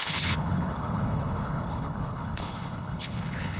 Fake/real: fake